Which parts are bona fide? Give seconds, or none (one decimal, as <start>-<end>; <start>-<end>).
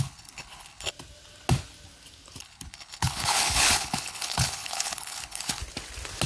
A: 0.9-2.4; 5.6-6.3